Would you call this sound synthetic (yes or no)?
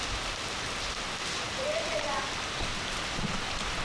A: no